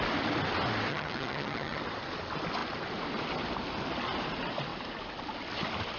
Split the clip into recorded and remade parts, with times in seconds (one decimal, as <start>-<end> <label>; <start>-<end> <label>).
0.0-0.9 recorded; 0.9-1.8 remade; 1.8-6.0 recorded